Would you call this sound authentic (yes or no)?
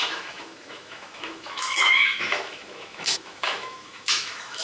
no